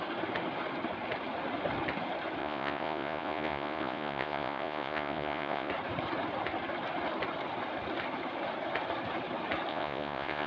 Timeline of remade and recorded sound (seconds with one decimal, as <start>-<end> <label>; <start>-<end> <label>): 0.0-2.4 recorded; 2.4-5.7 remade; 5.7-9.7 recorded; 9.7-10.5 remade